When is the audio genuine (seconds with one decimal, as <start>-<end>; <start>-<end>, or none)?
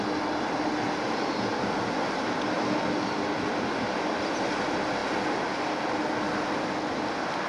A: 0.0-7.5